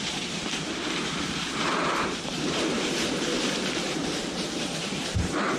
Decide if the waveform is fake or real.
fake